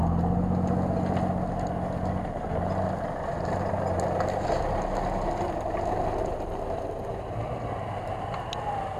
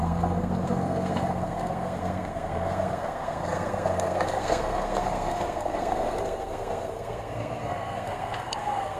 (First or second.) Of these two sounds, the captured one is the first